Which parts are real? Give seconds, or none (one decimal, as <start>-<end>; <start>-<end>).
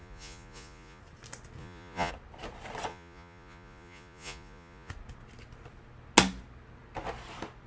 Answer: 1.0-1.6; 2.1-2.9; 4.9-7.7